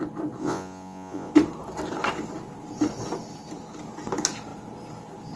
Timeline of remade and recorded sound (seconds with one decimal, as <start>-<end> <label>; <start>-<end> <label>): 0.0-0.4 recorded; 0.4-1.3 remade; 1.3-5.4 recorded